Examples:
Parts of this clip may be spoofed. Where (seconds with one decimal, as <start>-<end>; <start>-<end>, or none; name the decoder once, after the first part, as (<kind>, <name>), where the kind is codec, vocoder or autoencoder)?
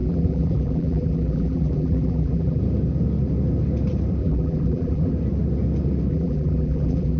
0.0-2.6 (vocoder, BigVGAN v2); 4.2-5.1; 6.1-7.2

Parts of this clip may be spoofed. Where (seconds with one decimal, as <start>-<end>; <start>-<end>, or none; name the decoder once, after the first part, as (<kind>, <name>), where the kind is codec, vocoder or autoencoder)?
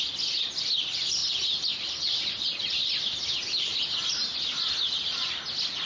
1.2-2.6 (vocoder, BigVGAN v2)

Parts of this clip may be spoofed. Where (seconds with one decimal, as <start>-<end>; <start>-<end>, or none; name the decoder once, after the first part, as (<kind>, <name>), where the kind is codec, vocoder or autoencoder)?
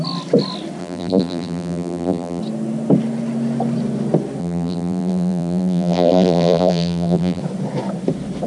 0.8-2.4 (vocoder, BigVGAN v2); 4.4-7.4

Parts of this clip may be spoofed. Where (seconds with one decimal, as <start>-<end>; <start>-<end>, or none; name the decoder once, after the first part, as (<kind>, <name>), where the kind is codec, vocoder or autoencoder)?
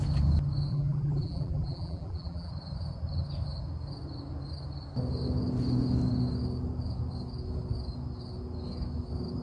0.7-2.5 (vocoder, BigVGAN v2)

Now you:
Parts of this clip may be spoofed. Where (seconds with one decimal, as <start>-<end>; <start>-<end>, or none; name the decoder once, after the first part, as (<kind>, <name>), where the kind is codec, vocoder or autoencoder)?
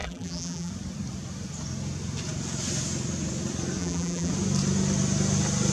0.0-0.7 (vocoder, BigVGAN v2); 3.8-4.3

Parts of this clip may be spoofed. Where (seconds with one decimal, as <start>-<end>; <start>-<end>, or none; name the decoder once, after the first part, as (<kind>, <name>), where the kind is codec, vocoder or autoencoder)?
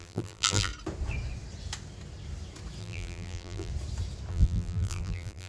0.0-0.7 (vocoder, BigVGAN v2); 2.8-3.7; 4.3-5.5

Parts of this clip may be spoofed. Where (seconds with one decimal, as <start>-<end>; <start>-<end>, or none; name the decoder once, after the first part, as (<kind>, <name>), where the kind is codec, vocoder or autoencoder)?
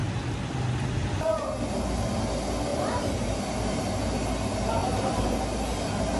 2.7-3.4 (vocoder, BigVGAN v2); 4.8-5.4